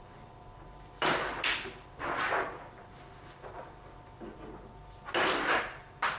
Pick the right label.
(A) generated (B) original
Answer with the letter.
B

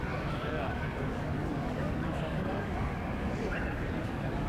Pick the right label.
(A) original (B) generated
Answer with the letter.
B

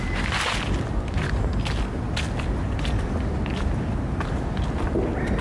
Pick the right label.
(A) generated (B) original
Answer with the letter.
B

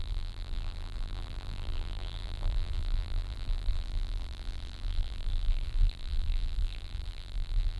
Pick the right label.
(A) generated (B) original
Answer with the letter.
A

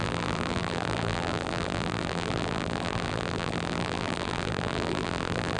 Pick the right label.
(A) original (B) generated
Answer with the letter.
B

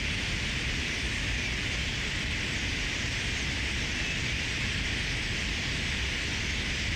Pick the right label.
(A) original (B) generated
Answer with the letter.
A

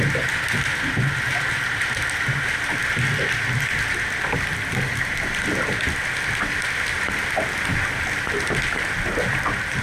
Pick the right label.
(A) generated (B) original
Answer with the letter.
B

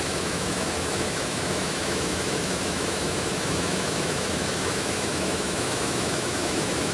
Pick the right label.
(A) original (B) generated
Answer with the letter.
B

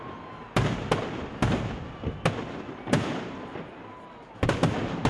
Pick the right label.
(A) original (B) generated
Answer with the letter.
A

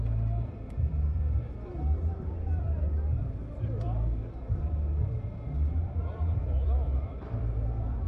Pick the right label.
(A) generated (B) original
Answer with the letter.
A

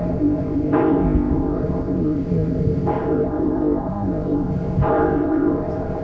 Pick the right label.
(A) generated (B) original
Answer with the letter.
A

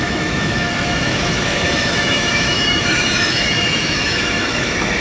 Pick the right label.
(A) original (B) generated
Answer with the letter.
B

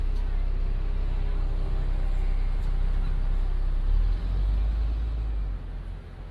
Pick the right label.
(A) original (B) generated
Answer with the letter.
A